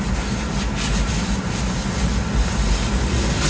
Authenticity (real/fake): real